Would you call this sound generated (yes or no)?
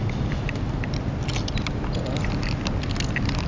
no